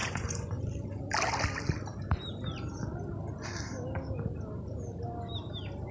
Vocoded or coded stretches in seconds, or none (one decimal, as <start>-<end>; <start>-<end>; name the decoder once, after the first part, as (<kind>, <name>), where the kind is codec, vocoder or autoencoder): 0.0-0.6 (vocoder, Vocos)